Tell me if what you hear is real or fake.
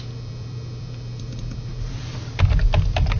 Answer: fake